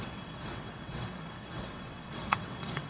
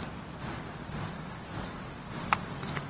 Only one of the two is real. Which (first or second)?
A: second